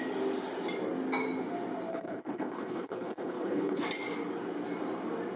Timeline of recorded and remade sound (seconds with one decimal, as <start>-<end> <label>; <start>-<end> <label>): 0.0-1.9 recorded; 1.9-3.8 remade; 3.8-5.4 recorded